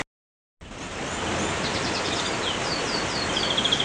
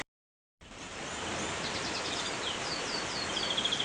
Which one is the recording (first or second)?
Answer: first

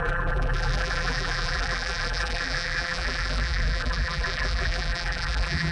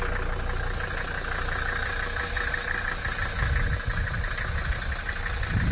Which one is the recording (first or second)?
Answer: second